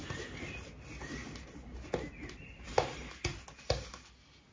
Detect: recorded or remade recorded